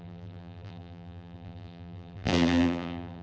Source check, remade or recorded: remade